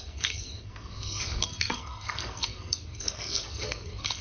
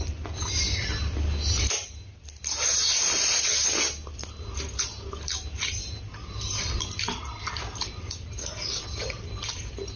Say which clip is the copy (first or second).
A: first